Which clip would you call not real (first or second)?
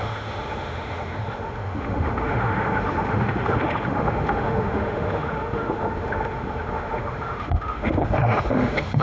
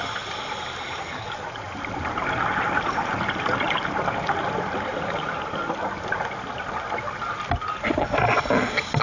first